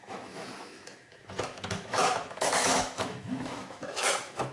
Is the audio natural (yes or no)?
no